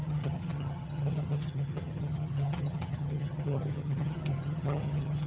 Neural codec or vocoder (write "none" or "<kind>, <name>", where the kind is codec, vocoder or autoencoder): vocoder, HiFi-GAN